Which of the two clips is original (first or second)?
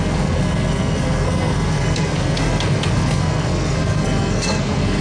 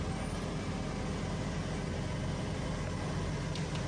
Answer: second